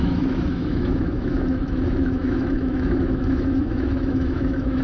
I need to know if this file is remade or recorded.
remade